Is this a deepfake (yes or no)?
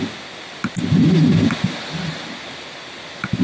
no